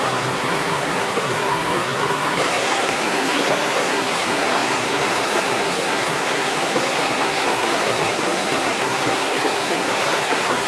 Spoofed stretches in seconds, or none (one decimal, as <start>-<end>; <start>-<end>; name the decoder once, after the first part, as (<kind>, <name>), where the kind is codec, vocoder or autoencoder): 0.0-10.7 (codec, SNAC)